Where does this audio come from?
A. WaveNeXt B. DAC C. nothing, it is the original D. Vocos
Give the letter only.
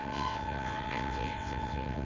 A